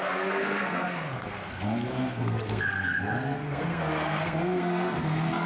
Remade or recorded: remade